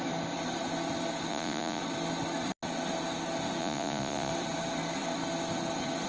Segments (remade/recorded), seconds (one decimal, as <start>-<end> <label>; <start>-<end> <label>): 0.0-1.3 recorded; 1.3-1.8 remade; 1.8-3.6 recorded; 3.6-4.3 remade; 4.3-6.1 recorded